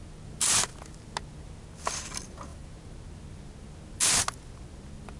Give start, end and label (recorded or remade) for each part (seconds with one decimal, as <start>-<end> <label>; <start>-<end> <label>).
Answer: 0.0-5.2 recorded